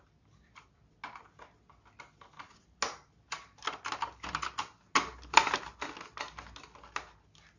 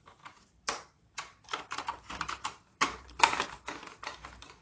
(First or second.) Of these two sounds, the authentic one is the first